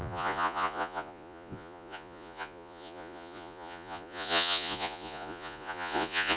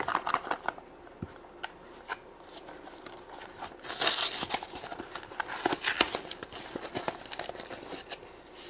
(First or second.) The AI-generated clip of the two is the first